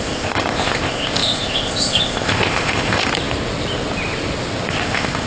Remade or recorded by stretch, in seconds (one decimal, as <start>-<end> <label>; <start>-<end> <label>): 0.0-3.1 remade; 3.1-4.7 recorded; 4.7-5.3 remade